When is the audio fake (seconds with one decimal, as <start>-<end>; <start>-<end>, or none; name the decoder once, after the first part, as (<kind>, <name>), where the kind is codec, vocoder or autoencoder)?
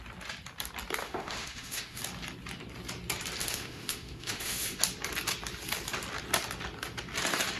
1.0-2.0 (autoencoder, DAC-VAE); 3.4-4.8